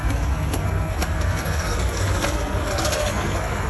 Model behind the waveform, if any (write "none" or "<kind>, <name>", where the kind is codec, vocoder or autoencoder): codec, SNAC